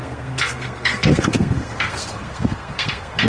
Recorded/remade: remade